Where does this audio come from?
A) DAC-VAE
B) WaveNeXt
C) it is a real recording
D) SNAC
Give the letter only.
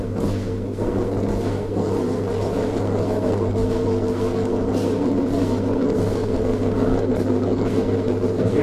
D